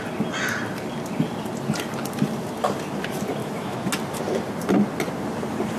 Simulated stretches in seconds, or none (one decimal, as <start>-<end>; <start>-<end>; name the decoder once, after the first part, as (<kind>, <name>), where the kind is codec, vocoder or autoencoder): 3.4-3.9 (autoencoder, DAC-VAE)